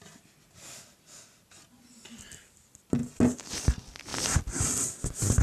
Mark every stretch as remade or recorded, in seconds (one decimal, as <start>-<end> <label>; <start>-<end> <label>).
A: 0.0-5.4 recorded